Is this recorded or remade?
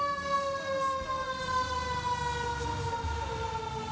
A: recorded